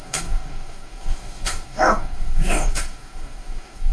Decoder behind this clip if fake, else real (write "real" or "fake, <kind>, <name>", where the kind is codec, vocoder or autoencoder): fake, codec, DAC